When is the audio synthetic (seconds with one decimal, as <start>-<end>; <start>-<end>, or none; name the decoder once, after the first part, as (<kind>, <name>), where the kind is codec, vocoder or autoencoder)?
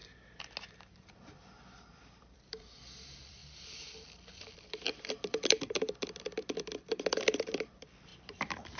0.7-3.4 (vocoder, BigVGAN v2); 4.4-8.8